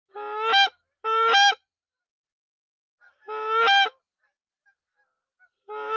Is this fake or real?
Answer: real